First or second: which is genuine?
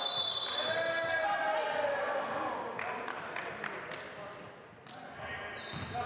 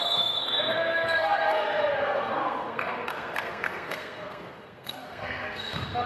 first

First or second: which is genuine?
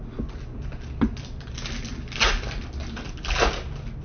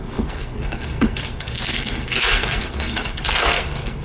first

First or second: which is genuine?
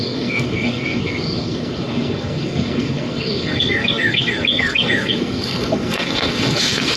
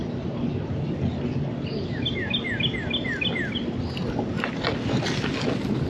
second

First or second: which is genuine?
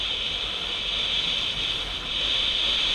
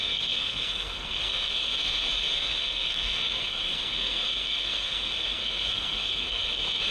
first